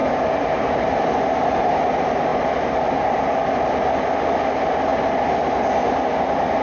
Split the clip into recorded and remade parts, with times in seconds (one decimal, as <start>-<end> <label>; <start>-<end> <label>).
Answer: 0.0-1.7 remade; 1.7-6.6 recorded